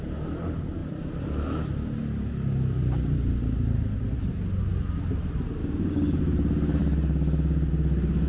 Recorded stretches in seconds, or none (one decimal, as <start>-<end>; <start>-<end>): 0.0-5.6; 6.2-8.3

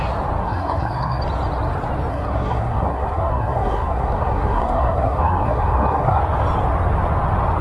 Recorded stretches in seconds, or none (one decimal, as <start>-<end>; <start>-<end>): 0.0-0.4; 1.2-2.1; 6.2-7.6

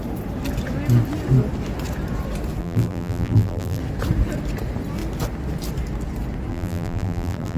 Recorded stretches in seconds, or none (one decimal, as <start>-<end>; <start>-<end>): 0.0-2.6; 3.8-6.5

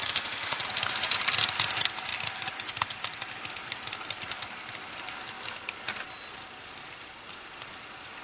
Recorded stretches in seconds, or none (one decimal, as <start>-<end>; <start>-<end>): 0.6-8.2

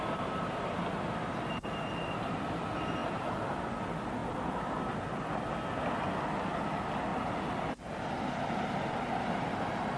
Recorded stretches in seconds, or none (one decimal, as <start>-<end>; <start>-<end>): 0.0-3.0; 3.7-7.1

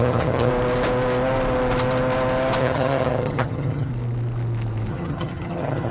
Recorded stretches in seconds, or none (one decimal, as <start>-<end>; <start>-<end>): 0.5-2.6; 3.9-4.9

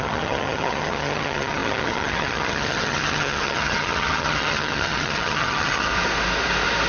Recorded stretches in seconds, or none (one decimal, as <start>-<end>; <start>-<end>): 5.9-6.9

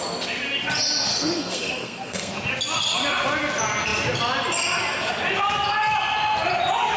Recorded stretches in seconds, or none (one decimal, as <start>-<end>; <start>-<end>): 0.0-1.1; 2.3-7.0